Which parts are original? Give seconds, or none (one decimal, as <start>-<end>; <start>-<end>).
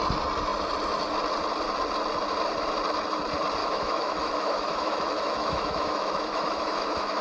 0.0-3.6